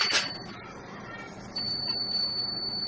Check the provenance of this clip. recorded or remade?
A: remade